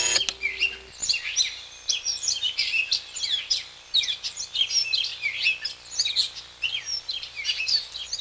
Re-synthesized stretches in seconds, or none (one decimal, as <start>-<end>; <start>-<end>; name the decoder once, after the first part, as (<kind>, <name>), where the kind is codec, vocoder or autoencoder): 1.0-4.4 (vocoder, BigVGAN v2); 6.9-8.2